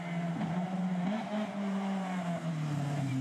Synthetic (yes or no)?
yes